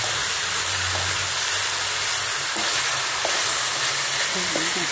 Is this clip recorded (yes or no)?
yes